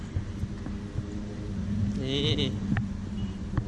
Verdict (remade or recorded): recorded